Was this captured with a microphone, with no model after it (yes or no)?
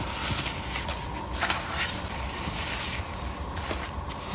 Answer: yes